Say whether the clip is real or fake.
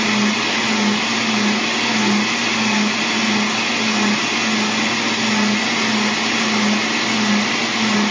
real